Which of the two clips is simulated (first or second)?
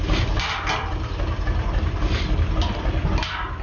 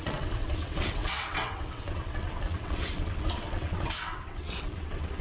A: second